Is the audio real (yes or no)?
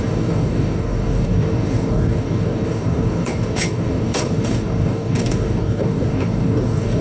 no